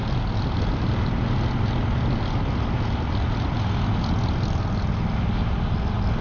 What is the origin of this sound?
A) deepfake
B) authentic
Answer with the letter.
B